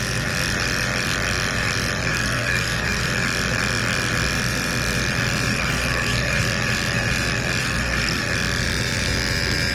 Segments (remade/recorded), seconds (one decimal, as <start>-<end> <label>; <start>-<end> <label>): 0.0-2.1 recorded; 2.1-3.1 remade; 3.1-5.5 recorded; 5.5-6.4 remade; 6.4-7.6 recorded; 7.6-8.2 remade; 8.2-9.7 recorded